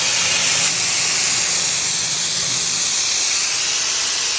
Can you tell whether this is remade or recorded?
recorded